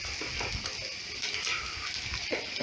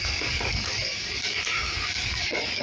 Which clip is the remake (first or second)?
second